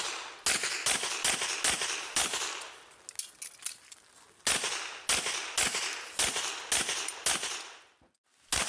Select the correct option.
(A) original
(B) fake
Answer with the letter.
A